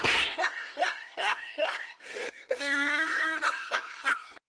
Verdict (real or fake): fake